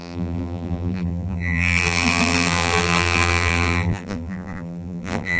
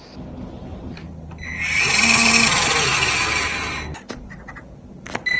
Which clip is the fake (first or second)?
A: first